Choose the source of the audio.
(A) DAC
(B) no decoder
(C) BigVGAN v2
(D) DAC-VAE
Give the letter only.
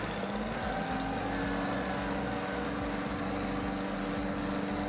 B